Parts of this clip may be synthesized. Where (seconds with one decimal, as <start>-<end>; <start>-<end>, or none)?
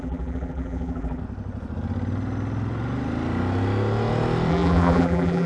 0.0-1.2; 4.5-5.5